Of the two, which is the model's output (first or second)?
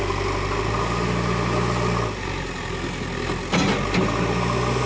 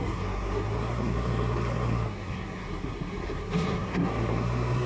second